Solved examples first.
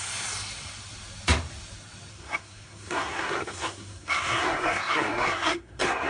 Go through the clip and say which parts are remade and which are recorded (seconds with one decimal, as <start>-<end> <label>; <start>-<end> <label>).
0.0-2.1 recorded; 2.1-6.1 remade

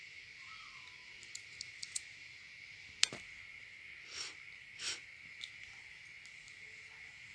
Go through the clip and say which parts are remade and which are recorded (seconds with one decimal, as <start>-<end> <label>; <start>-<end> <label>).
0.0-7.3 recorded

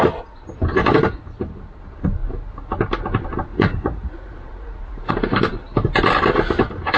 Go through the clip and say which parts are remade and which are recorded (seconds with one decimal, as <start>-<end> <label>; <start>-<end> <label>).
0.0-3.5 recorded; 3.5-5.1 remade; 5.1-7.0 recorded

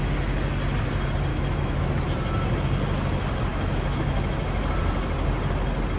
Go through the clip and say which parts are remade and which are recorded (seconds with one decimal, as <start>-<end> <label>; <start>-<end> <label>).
0.0-1.3 recorded; 1.3-1.9 remade; 1.9-3.5 recorded; 3.5-4.6 remade; 4.6-6.0 recorded

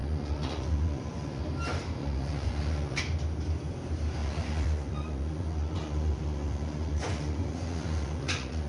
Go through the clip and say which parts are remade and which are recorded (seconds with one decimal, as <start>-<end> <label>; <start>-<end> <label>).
0.0-1.4 remade; 1.4-2.0 recorded; 2.0-3.0 remade; 3.0-4.2 recorded; 4.2-8.7 remade